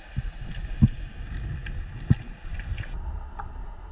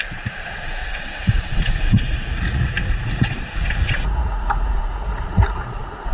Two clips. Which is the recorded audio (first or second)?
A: first